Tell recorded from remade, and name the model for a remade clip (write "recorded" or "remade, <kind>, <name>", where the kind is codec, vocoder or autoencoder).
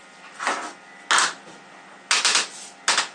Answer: recorded